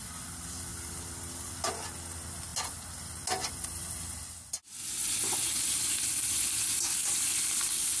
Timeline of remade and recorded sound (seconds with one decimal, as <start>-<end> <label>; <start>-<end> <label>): 0.0-0.7 recorded; 0.7-1.5 remade; 1.5-7.0 recorded; 7.0-8.0 remade